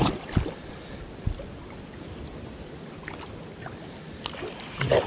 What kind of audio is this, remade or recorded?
recorded